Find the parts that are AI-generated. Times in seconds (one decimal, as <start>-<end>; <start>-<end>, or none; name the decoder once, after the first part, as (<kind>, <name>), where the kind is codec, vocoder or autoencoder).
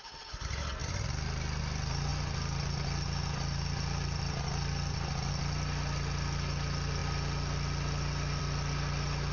none